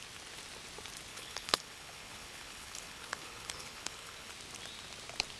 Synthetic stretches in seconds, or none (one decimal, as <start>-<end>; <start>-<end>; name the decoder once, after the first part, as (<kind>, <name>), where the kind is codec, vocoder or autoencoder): 1.1-4.3 (codec, HILCodec)